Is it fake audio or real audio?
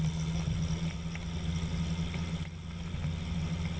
real